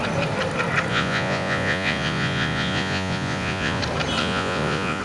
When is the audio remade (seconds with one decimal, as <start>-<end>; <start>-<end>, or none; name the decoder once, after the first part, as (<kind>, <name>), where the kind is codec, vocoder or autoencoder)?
0.9-3.8 (vocoder, Vocos); 4.2-5.0